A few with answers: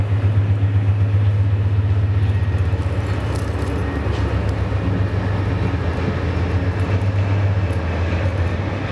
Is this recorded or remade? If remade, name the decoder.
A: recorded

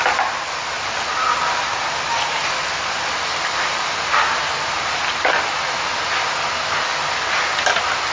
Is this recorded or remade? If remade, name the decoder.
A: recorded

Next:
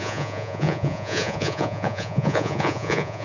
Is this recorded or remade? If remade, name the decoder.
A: remade, vocoder, Vocos